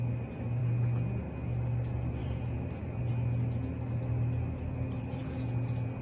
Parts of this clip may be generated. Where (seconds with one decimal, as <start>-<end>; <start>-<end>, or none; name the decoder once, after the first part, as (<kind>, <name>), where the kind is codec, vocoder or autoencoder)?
2.2-3.0 (vocoder, BigVGAN v2)